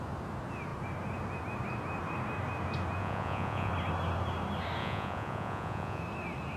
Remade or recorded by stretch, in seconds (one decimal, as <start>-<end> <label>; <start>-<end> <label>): 0.0-3.0 recorded; 3.0-3.7 remade; 3.7-4.8 recorded; 4.8-6.0 remade; 6.0-6.6 recorded